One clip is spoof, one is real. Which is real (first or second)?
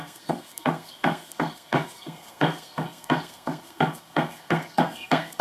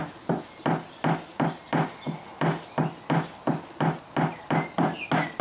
second